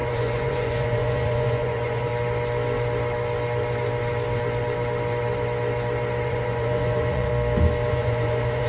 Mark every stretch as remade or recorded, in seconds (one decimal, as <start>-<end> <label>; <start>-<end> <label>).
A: 0.0-2.1 remade; 2.1-6.3 recorded; 6.3-7.3 remade; 7.3-7.9 recorded; 7.9-8.7 remade